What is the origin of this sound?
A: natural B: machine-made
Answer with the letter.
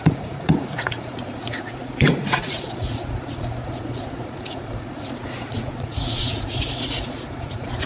B